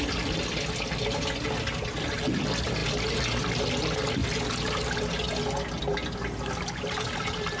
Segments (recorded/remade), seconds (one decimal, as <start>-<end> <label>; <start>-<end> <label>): 0.0-7.6 recorded